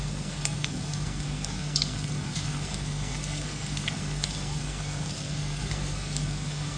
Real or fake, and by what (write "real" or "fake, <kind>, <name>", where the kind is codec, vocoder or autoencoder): fake, codec, SNAC